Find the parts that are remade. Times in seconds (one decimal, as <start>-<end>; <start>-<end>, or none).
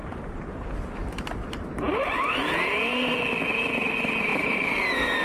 0.0-3.1; 4.3-4.8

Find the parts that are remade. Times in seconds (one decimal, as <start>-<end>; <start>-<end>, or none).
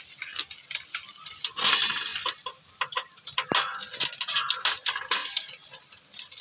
5.2-6.4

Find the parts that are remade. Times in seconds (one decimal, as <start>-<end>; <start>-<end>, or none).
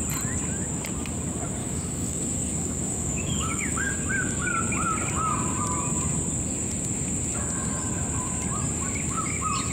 1.6-3.9